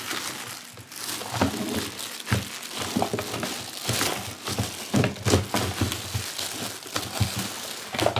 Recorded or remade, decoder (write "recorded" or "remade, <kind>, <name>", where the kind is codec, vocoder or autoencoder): recorded